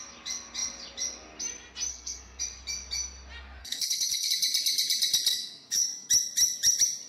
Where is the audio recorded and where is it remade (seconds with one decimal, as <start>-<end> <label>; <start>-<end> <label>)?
0.0-1.9 recorded; 1.9-2.4 remade; 2.4-3.6 recorded; 3.6-4.3 remade; 4.3-5.3 recorded; 5.3-6.1 remade; 6.1-7.1 recorded